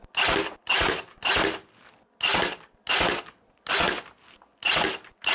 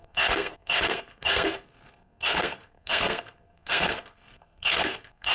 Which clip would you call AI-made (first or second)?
second